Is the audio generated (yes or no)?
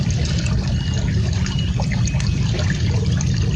no